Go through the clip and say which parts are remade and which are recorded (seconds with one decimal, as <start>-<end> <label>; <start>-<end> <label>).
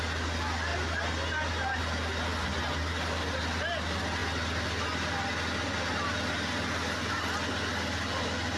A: 0.0-8.6 recorded